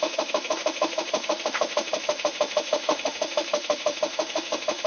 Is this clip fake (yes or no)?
yes